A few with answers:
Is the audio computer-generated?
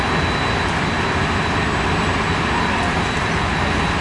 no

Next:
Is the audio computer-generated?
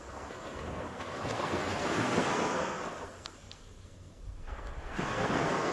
yes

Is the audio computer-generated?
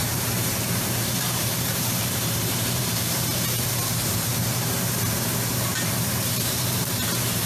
yes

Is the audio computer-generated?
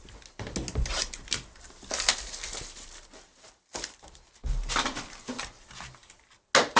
no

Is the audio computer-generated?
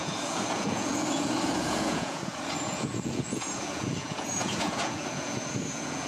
yes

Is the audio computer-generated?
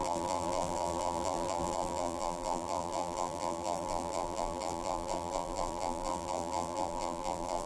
yes